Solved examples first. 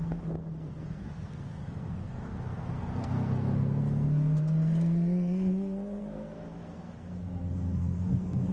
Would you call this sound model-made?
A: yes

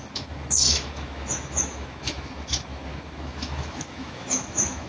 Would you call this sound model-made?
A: yes